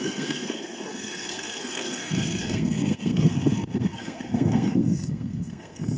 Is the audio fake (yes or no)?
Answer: yes